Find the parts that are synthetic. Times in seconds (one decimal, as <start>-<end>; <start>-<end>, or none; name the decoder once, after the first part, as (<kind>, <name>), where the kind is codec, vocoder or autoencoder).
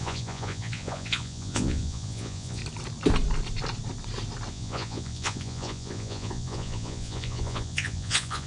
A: 0.0-2.6 (vocoder, Vocos); 4.5-8.5